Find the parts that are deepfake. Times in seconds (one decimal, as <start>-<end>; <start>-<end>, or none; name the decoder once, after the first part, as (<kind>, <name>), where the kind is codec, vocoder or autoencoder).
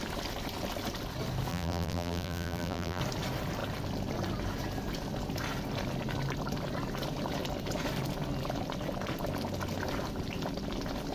1.5-3.0 (vocoder, BigVGAN v2)